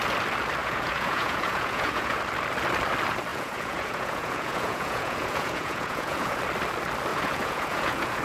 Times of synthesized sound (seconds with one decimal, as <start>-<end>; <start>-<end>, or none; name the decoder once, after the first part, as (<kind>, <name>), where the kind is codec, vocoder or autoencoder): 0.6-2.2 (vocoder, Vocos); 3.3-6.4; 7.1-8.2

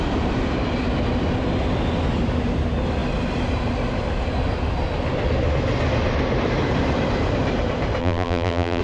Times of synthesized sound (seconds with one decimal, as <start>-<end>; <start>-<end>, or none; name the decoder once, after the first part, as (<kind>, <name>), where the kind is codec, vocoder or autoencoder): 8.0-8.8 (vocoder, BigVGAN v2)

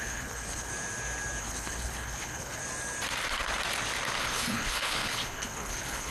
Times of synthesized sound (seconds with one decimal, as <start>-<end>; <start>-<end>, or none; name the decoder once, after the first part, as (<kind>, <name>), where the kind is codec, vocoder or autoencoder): 0.0-0.7 (codec, HILCodec); 1.4-2.6; 4.2-6.1

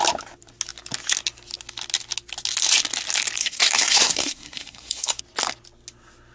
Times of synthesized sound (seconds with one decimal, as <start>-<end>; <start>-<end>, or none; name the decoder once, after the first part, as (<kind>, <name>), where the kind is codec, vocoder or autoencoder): 3.4-5.2 (codec, SNAC)

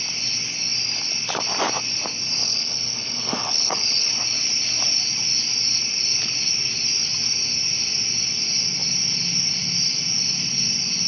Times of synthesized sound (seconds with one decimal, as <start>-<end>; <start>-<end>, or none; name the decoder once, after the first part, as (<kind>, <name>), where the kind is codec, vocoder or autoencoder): 2.4-4.1 (codec, HILCodec)

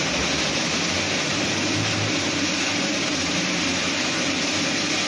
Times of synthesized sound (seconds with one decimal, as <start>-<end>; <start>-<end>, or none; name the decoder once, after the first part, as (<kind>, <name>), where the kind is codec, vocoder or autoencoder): 1.3-4.4 (vocoder, BigVGAN v2)